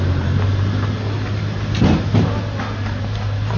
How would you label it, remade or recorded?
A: recorded